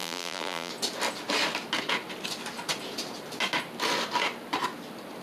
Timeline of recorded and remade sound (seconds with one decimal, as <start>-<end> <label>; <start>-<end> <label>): 0.0-0.7 remade; 0.7-5.2 recorded